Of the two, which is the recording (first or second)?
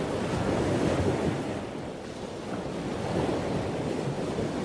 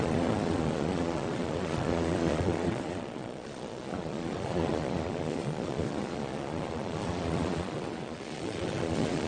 first